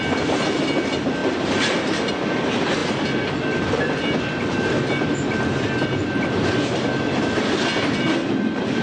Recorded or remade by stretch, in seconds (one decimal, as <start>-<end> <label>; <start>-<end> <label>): 0.0-8.8 recorded